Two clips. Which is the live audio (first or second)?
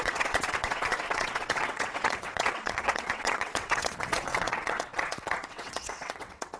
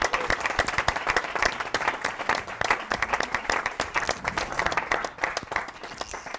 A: second